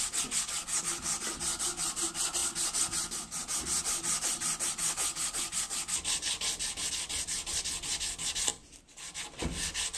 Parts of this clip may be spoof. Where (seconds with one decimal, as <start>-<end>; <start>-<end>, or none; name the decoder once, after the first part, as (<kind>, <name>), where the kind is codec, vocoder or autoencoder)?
none